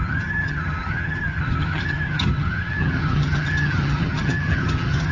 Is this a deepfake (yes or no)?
yes